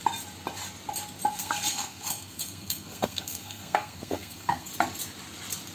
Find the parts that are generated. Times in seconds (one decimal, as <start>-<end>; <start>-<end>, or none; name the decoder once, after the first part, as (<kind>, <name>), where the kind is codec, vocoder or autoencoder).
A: 1.3-4.7 (codec, SNAC)

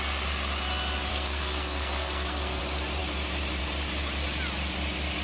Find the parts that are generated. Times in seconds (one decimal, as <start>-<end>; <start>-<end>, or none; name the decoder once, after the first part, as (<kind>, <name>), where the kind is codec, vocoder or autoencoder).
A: 1.1-2.6 (codec, SNAC)

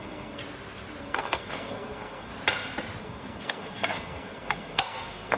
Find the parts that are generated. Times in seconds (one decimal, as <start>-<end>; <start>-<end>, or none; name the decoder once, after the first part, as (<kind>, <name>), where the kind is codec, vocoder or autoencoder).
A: 0.0-0.4 (codec, SNAC); 1.0-2.3; 3.0-5.4

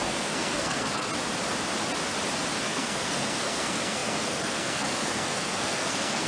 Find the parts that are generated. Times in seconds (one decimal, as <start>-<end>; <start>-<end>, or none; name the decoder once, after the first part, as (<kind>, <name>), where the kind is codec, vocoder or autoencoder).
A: 0.0-1.1 (codec, SNAC); 2.6-6.3